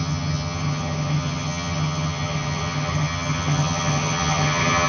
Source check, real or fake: fake